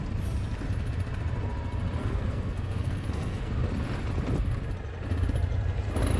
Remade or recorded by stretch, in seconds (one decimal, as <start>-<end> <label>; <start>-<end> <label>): 0.0-2.0 recorded; 2.0-3.5 remade; 3.5-6.2 recorded